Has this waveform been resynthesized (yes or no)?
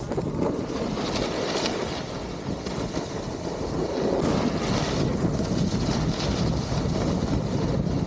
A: no